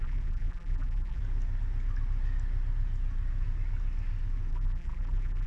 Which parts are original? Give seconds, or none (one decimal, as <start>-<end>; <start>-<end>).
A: 1.2-4.5